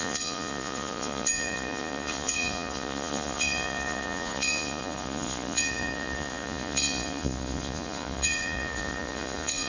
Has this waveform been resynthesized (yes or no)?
yes